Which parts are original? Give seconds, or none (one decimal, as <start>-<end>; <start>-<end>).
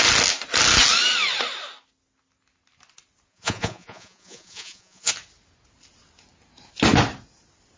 0.0-3.3; 5.1-7.8